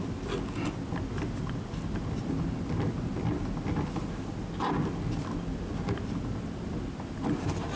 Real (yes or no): yes